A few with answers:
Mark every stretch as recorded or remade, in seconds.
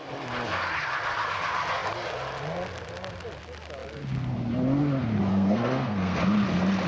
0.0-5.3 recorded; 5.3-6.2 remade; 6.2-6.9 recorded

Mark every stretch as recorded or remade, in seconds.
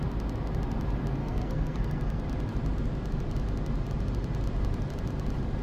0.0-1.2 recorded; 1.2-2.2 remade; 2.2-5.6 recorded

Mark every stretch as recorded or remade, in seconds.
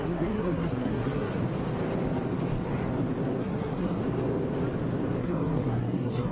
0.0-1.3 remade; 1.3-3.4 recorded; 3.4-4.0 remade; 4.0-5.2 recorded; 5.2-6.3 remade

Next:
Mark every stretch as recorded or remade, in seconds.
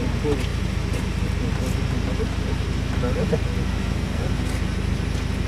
0.0-3.6 recorded; 3.6-4.3 remade; 4.3-5.5 recorded